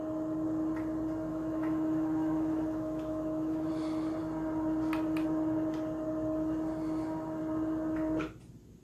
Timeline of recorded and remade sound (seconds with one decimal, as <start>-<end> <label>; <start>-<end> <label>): 0.0-1.3 recorded; 1.3-3.7 remade; 3.7-8.8 recorded